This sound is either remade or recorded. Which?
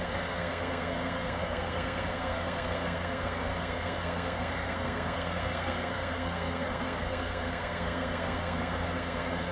remade